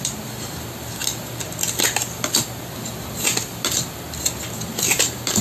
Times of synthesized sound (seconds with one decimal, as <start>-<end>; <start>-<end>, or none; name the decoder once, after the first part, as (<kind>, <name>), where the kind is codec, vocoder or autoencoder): none